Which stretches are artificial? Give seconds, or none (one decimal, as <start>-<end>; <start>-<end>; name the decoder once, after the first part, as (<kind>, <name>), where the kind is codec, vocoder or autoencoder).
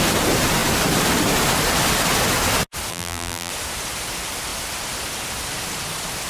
2.9-3.5 (vocoder, BigVGAN v2)